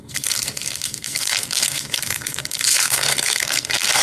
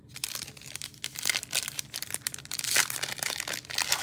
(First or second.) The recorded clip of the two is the second